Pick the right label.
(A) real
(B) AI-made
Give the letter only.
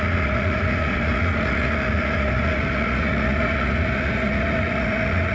B